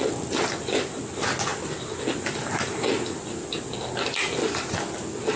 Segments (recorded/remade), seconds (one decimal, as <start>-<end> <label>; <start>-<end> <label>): 0.0-5.4 recorded